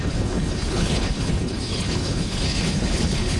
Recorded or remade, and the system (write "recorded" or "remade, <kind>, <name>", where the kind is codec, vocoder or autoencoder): remade, codec, HILCodec